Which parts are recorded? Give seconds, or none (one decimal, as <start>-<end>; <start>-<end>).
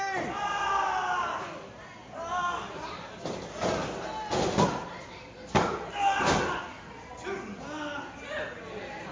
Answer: 0.0-9.1